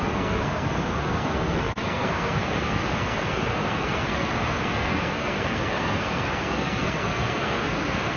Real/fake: fake